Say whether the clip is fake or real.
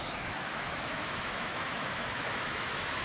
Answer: fake